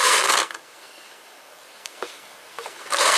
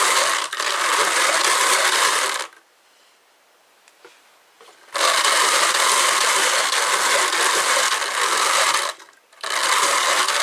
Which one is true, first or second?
second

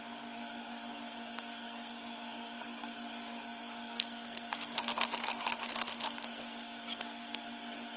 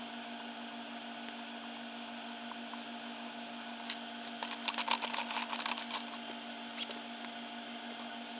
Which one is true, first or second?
second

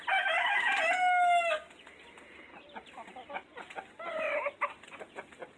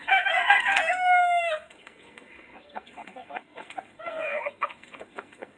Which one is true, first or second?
first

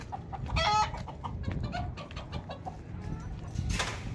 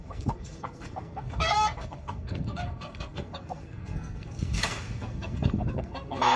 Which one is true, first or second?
first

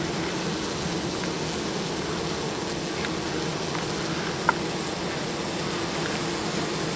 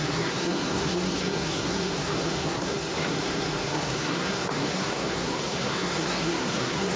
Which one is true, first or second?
first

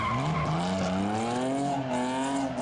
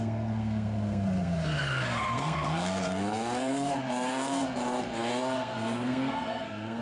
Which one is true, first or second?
first